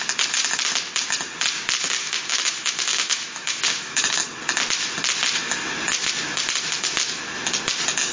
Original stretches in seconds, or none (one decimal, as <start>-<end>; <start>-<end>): 0.0-2.0; 4.2-8.1